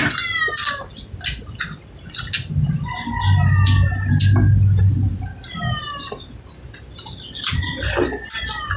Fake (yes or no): no